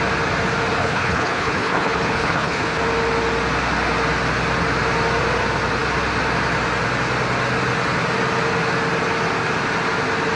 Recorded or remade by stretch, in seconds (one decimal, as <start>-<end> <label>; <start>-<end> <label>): 0.0-0.8 recorded; 0.8-2.8 remade; 2.8-10.4 recorded